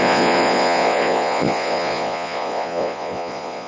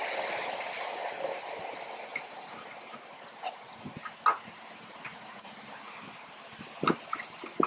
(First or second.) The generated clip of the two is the first